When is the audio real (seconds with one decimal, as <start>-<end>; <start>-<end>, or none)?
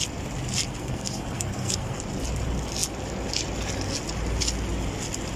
0.0-0.6; 2.0-5.4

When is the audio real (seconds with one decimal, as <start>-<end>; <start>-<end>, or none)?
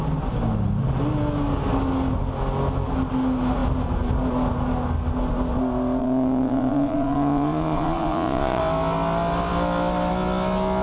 0.0-6.0; 8.6-10.8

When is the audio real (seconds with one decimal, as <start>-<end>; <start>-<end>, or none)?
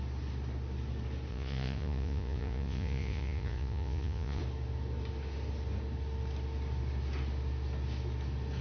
0.0-1.3; 4.4-8.6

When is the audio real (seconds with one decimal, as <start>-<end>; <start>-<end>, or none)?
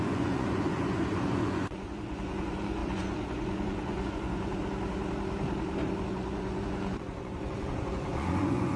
4.6-6.1